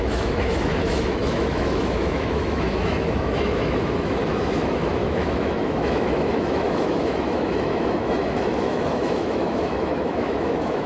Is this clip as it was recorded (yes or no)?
no